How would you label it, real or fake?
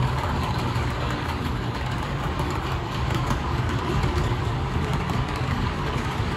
fake